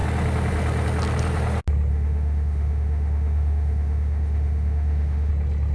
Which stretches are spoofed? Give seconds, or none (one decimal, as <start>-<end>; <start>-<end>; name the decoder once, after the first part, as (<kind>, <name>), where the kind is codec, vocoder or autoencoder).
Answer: 1.9-5.3 (autoencoder, DAC-VAE)